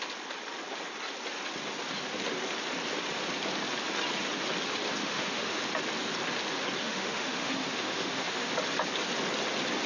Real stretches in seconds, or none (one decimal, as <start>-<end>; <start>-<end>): 0.0-5.0; 5.6-6.8; 8.5-9.9